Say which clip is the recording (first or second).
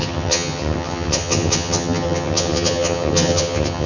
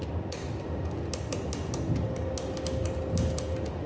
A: second